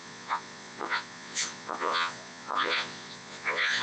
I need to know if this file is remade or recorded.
remade